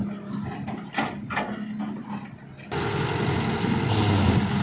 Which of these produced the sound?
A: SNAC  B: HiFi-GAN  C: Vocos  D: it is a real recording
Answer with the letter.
D